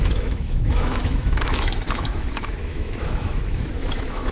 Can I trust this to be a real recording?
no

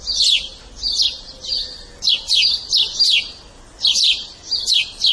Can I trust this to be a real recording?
yes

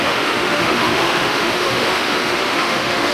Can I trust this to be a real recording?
no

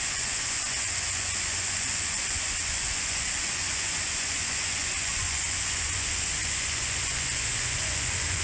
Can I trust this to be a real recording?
no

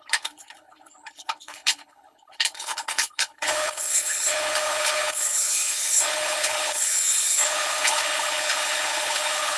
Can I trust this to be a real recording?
no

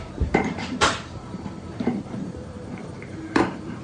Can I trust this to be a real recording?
no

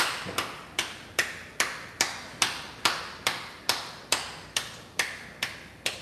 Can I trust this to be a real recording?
yes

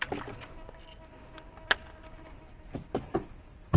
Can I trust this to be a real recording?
yes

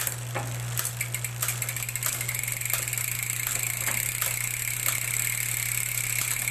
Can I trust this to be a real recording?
yes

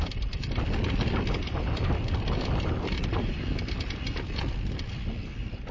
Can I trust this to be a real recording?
yes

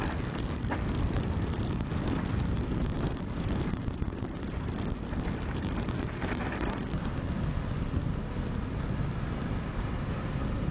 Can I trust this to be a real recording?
yes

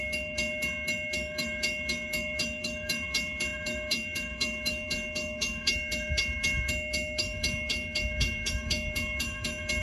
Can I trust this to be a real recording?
no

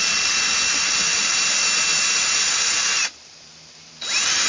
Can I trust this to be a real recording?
yes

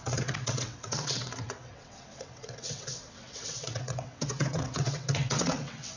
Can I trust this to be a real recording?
no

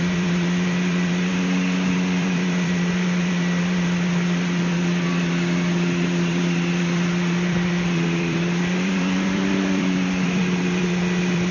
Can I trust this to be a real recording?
no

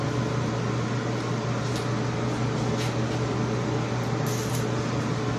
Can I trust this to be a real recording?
yes